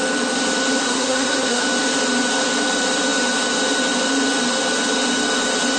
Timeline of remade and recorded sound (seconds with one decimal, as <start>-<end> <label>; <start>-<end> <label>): 0.0-0.8 recorded; 0.8-1.6 remade; 1.6-5.8 recorded